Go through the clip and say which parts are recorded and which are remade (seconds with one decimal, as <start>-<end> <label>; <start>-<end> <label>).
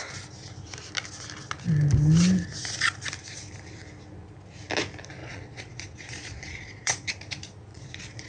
0.0-5.2 recorded; 5.2-7.1 remade; 7.1-7.7 recorded; 7.7-8.3 remade